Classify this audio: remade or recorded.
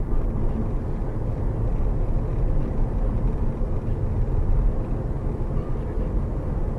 recorded